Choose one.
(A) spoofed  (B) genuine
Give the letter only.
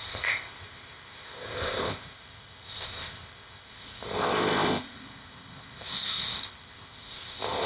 A